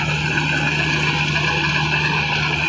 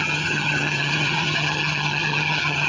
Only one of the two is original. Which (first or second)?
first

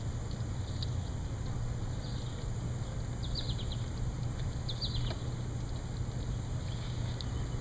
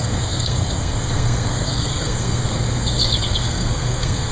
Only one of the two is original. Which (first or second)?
first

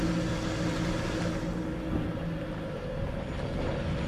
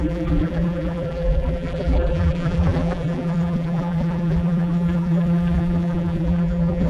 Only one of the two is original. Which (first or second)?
first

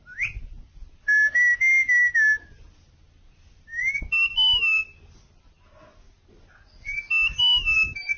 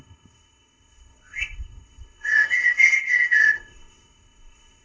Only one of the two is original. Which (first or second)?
first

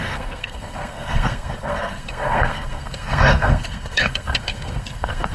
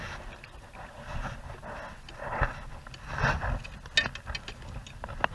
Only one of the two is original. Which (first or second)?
second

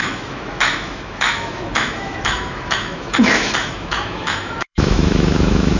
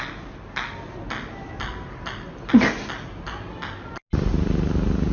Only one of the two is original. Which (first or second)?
second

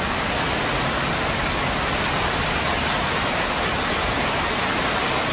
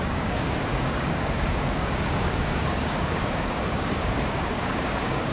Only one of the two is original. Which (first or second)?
first